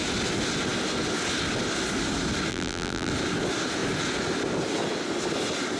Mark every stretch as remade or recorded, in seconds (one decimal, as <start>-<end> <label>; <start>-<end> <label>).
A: 0.0-2.5 recorded; 2.5-3.1 remade; 3.1-5.8 recorded